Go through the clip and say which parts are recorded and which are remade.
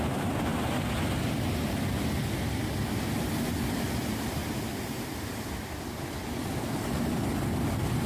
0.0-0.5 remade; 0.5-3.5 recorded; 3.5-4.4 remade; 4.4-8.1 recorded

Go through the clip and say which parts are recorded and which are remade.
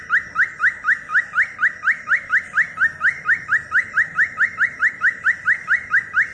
0.0-6.3 recorded